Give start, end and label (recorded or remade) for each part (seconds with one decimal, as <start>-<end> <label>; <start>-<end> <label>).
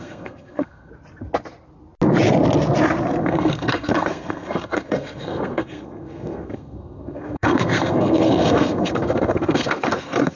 0.0-0.9 remade; 0.9-3.2 recorded; 3.2-10.4 remade